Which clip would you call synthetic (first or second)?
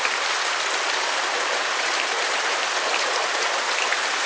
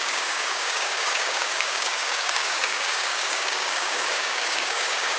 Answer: second